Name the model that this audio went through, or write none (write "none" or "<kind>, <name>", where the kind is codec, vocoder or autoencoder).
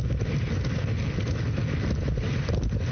none